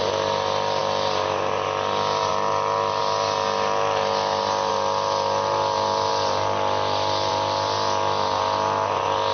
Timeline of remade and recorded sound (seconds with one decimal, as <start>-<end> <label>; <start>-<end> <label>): 0.0-9.3 recorded